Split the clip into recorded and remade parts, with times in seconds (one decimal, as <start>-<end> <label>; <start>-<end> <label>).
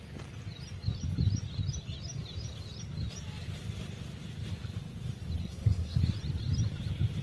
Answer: 0.0-5.4 recorded; 5.4-6.0 remade; 6.0-7.2 recorded